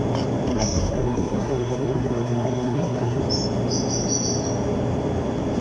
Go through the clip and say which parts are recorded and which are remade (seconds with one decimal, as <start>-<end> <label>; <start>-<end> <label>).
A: 0.0-0.5 recorded; 0.5-3.2 remade; 3.2-5.6 recorded